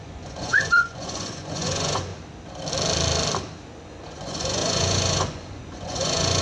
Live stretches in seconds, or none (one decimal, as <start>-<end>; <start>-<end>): 2.1-3.8